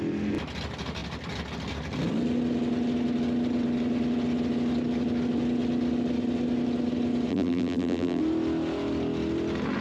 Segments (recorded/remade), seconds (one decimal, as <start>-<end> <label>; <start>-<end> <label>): 0.0-7.3 recorded; 7.3-8.2 remade; 8.2-9.8 recorded

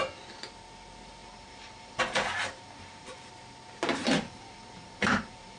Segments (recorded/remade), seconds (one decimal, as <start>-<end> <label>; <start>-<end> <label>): 0.0-1.2 recorded; 1.2-3.3 remade; 3.3-4.0 recorded; 4.0-5.6 remade

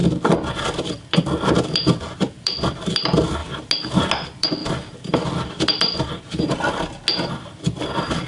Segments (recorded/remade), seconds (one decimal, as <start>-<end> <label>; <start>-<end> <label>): 0.0-0.5 recorded; 0.5-3.4 remade; 3.4-4.1 recorded; 4.1-4.6 remade; 4.6-7.3 recorded; 7.3-8.3 remade

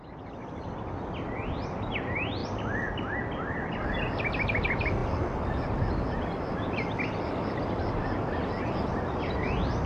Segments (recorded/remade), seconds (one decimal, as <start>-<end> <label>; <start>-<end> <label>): 0.0-9.9 recorded

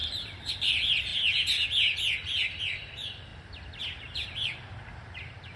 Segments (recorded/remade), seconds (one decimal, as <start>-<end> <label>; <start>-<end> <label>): 0.0-1.1 remade; 1.1-2.6 recorded; 2.6-3.3 remade; 3.3-4.0 recorded; 4.0-5.6 remade

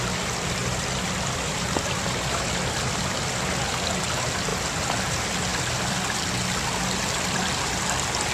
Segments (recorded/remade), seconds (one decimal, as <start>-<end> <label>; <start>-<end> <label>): 0.0-0.6 recorded; 0.6-3.1 remade; 3.1-5.5 recorded; 5.5-6.0 remade; 6.0-8.3 recorded

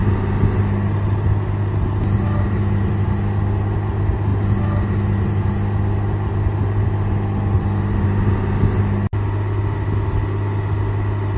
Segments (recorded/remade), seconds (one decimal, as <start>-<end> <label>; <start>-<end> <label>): 0.0-11.4 recorded

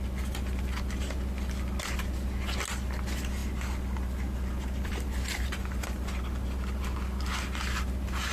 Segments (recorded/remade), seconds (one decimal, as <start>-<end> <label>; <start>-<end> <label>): 0.0-3.4 recorded; 3.4-6.2 remade; 6.2-8.3 recorded